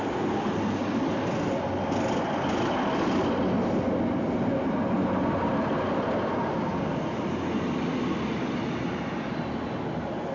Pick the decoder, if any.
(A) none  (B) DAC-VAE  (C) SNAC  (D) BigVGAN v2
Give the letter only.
A